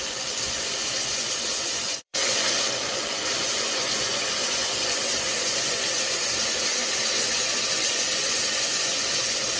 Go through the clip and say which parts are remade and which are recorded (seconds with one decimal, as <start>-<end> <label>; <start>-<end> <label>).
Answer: 0.0-9.6 remade